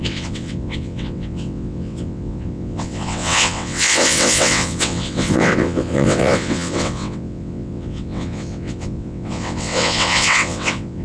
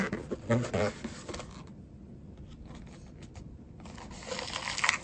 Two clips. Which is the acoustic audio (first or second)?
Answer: second